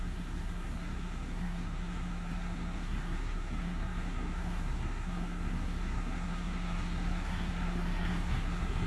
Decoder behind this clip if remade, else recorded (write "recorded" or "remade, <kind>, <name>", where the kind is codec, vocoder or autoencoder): remade, codec, SNAC